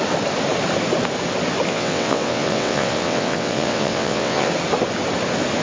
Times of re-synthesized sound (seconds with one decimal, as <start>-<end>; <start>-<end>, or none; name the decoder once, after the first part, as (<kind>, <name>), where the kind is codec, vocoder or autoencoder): 1.7-4.5 (vocoder, WaveNeXt)